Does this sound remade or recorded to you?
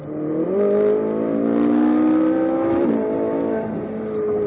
recorded